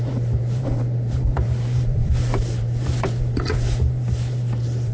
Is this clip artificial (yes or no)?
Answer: yes